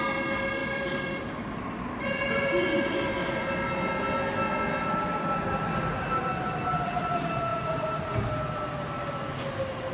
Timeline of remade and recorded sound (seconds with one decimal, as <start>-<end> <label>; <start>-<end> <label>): 0.0-0.6 recorded; 0.6-2.7 remade; 2.7-7.5 recorded; 7.5-8.1 remade; 8.1-9.9 recorded